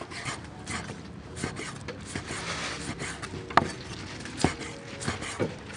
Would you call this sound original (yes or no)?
yes